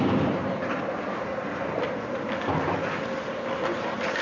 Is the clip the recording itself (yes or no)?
no